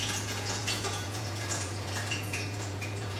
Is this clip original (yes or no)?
no